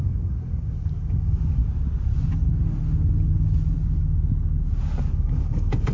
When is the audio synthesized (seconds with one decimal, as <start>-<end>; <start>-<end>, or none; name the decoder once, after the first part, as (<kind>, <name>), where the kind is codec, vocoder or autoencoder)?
0.0-1.6 (codec, DAC); 5.1-5.9

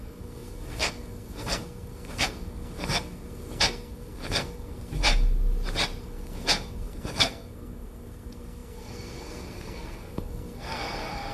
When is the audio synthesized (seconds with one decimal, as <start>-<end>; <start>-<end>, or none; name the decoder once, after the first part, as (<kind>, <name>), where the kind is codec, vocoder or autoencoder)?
0.0-5.1 (codec, SNAC); 6.0-11.3

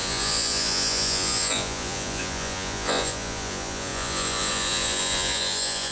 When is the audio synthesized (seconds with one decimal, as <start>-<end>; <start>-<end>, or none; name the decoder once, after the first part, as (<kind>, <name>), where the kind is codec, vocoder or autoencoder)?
0.0-5.9 (vocoder, Vocos)

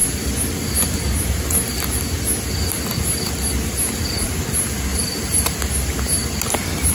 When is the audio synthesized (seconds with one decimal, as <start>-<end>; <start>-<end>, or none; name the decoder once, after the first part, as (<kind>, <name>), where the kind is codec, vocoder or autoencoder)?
4.9-5.6 (vocoder, BigVGAN v2)

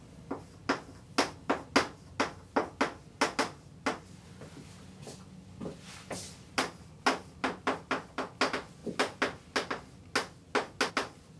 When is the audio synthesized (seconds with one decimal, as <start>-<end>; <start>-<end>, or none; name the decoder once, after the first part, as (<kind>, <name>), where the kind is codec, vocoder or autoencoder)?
none

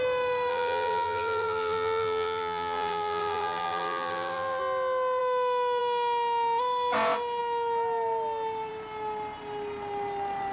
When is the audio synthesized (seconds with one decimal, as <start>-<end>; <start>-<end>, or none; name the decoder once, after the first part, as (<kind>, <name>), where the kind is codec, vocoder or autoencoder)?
0.5-4.6 (vocoder, BigVGAN v2)

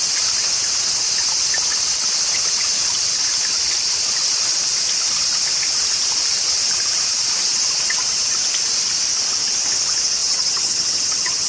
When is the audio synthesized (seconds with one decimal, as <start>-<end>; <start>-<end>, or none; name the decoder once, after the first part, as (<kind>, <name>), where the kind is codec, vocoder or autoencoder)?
10.2-11.5 (vocoder, HiFi-GAN)

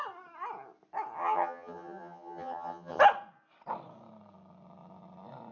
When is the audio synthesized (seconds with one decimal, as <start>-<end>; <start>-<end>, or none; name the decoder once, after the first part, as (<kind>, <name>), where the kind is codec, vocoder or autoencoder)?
1.2-3.0 (vocoder, HiFi-GAN)